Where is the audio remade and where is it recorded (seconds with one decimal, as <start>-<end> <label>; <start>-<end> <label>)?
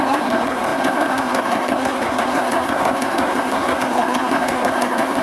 0.0-5.2 remade